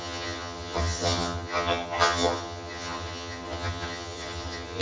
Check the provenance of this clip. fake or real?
fake